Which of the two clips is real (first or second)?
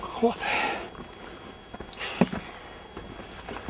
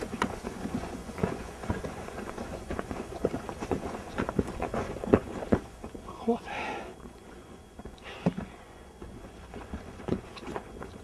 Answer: first